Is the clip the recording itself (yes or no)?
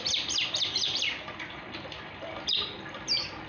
yes